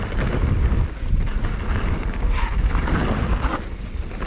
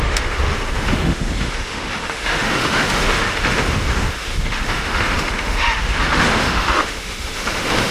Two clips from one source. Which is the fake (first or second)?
second